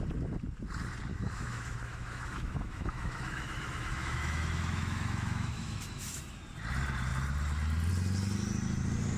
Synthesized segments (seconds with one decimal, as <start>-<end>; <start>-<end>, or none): 1.1-6.2